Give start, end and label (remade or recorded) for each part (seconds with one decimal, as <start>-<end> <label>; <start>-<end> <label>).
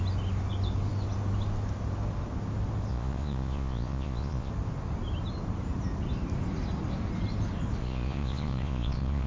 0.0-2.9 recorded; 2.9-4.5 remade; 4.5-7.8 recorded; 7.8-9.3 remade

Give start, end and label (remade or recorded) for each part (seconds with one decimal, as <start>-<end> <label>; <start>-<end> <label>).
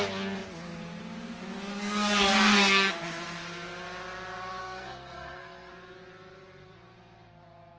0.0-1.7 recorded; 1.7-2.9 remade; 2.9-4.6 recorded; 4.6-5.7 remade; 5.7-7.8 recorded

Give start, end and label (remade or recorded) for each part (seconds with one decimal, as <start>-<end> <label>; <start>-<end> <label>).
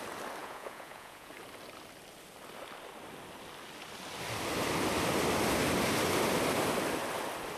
0.0-0.4 recorded; 0.4-1.3 remade; 1.3-7.6 recorded